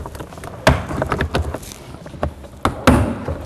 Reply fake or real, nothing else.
real